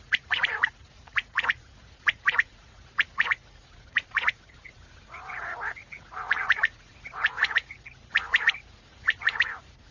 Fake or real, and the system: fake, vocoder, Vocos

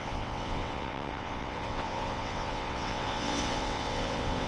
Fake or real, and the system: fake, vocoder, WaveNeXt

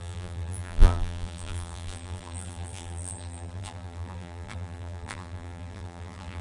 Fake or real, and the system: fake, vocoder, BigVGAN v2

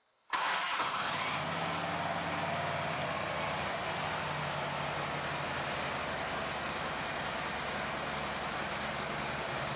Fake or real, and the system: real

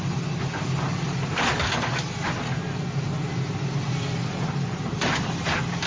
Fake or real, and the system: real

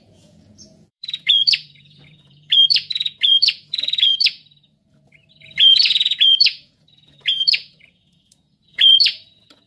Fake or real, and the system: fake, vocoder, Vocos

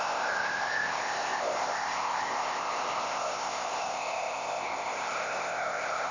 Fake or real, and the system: fake, codec, ZipCodec